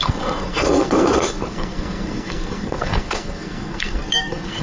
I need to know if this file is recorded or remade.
remade